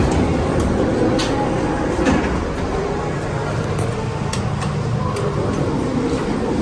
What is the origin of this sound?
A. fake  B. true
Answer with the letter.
B